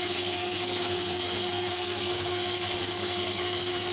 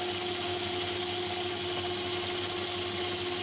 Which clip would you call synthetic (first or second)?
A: first